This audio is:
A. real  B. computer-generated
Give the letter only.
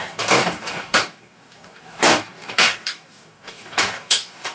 B